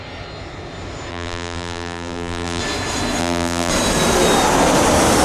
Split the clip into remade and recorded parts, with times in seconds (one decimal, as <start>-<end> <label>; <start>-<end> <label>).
0.0-1.1 recorded; 1.1-2.6 remade; 2.6-3.2 recorded; 3.2-3.7 remade; 3.7-5.2 recorded